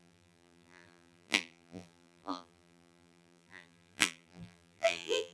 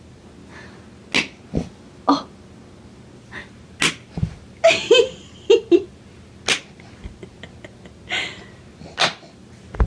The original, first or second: second